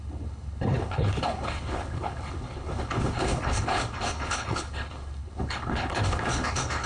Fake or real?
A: fake